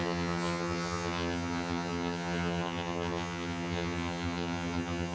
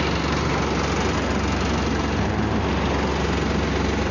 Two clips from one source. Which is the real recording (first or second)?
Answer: second